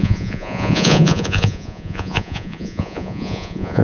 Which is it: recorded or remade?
remade